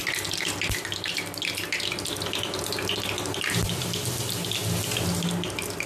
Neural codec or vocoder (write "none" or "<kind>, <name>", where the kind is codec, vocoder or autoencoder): none